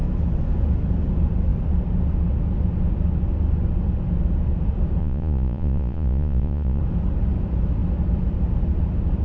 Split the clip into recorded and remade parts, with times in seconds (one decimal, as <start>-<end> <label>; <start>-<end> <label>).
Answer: 0.0-5.0 recorded; 5.0-6.8 remade; 6.8-9.2 recorded